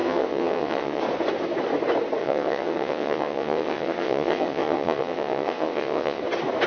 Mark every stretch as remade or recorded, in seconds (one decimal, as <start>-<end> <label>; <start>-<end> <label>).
0.0-1.0 remade; 1.0-2.2 recorded; 2.2-6.2 remade; 6.2-6.7 recorded